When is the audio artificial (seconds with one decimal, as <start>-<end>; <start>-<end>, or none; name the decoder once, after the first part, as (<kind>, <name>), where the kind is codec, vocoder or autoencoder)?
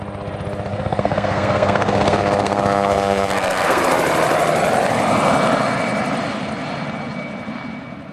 0.7-3.8 (codec, SNAC)